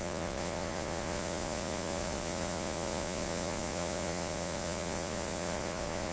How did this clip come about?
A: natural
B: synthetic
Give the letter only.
B